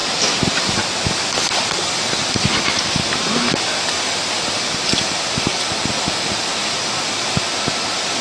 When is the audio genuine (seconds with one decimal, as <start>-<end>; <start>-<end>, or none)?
0.8-6.5; 7.3-8.2